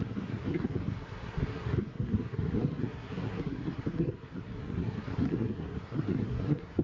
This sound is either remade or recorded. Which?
remade